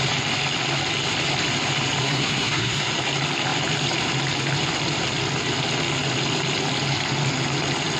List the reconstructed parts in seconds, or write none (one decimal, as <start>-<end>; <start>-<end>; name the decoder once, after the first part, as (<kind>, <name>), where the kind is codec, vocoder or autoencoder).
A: 2.0-2.9 (codec, SNAC)